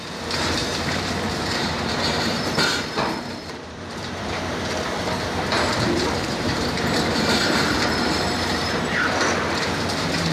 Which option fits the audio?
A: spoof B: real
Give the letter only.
A